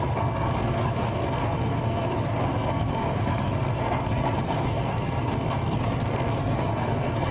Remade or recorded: remade